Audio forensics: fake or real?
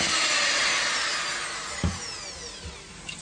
real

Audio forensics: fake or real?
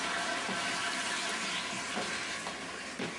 real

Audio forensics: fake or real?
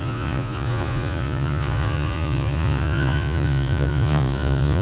fake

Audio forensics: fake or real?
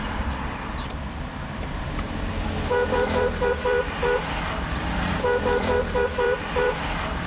fake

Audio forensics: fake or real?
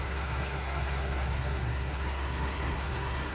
fake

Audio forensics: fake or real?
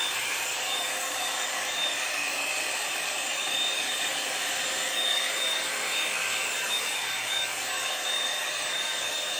fake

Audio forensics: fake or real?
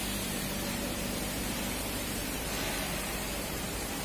fake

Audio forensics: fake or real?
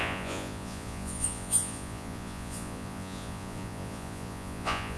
fake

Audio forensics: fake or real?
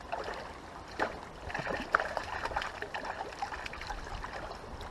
real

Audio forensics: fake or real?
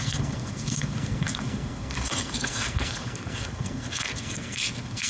fake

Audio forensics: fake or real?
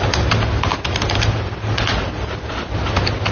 real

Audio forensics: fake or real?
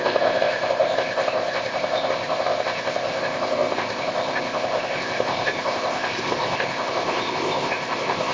fake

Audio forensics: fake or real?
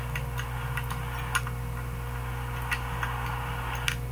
real